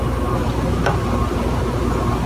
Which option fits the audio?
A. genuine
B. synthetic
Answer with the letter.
A